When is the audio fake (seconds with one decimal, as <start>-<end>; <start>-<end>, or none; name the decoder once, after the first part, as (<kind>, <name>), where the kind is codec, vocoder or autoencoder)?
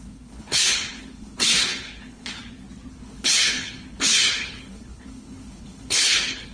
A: 0.0-2.4 (codec, HILCodec); 2.9-6.5